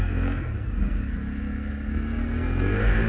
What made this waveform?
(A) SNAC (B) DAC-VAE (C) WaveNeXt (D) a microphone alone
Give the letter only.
A